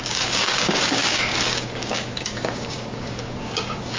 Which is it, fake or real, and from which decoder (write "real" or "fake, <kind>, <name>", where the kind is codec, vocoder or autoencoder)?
fake, codec, DAC